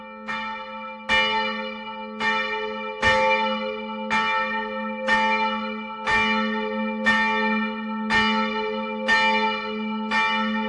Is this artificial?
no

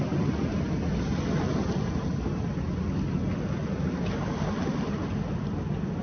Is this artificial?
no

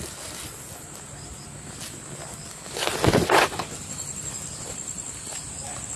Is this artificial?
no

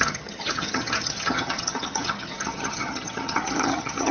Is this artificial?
yes